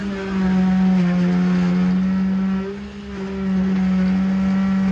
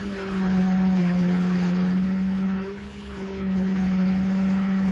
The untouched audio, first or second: first